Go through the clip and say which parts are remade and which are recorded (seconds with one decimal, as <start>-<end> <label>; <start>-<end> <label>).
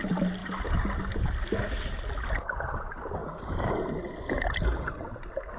0.0-3.2 recorded; 3.2-3.7 remade; 3.7-5.6 recorded